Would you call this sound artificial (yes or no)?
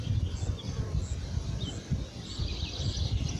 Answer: no